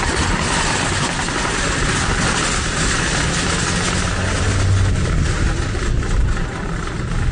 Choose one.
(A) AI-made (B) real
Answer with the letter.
B